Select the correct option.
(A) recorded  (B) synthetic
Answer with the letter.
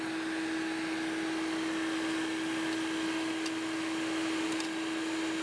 A